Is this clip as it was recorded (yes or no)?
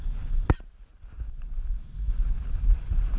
yes